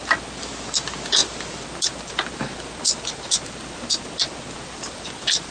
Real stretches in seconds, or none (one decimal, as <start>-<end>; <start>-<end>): 0.0-5.5